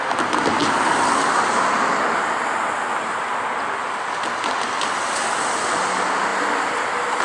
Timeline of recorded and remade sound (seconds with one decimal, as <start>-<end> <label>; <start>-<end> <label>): 0.0-7.2 recorded

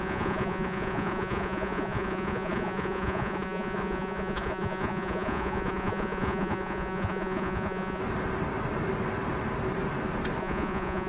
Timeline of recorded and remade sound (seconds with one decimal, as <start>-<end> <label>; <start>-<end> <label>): 0.0-8.0 remade; 8.0-10.4 recorded; 10.4-11.1 remade

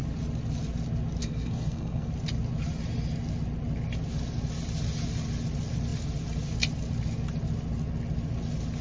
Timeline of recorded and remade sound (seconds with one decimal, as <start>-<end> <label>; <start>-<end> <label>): 0.0-1.2 recorded; 1.2-2.1 remade; 2.1-8.8 recorded